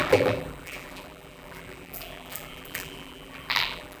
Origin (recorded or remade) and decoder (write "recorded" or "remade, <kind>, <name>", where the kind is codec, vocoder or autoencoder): remade, vocoder, BigVGAN v2